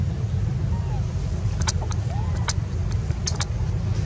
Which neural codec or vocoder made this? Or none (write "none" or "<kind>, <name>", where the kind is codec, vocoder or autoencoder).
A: none